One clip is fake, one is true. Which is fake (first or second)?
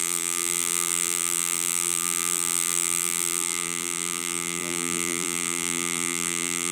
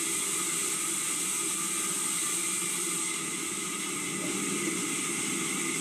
first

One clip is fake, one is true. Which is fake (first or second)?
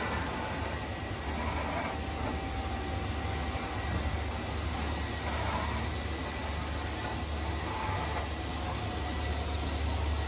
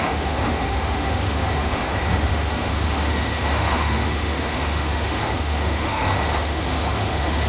second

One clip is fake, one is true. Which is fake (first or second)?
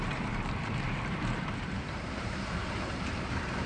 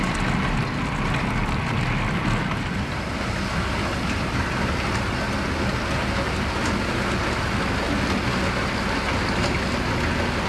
first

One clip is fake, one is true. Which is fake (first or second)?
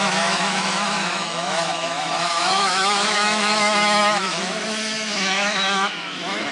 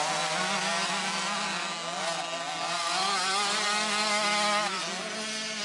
first